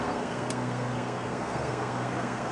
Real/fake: fake